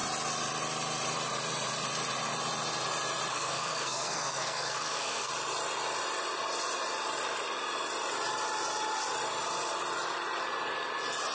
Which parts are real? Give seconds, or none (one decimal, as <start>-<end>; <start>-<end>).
0.0-3.3; 5.3-11.3